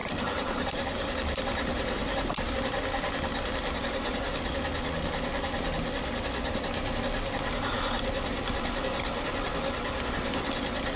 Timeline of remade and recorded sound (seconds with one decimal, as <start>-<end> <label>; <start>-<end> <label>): 0.0-2.5 remade; 2.5-11.0 recorded